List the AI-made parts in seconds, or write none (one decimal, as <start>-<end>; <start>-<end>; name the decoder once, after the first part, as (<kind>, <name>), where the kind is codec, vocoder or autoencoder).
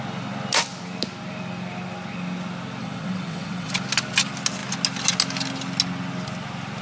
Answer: 2.8-3.7 (vocoder, WaveNeXt)